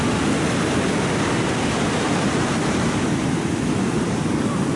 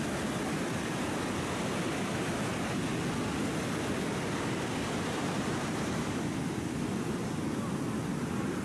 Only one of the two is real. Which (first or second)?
second